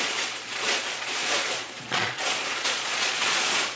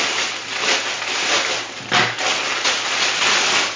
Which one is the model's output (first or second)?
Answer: first